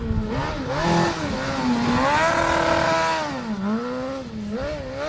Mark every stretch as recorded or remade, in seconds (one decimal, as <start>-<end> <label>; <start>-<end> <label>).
0.0-5.1 recorded